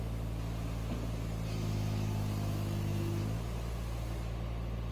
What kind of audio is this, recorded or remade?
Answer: recorded